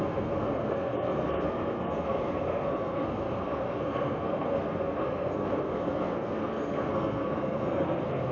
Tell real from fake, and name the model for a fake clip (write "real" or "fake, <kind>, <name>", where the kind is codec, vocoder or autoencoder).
fake, codec, SNAC